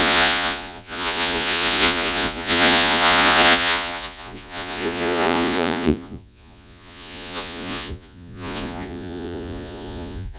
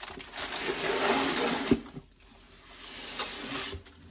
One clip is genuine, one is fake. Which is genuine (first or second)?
second